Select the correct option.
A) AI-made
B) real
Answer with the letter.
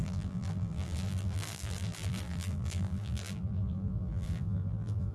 A